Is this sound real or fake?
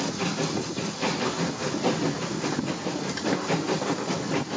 real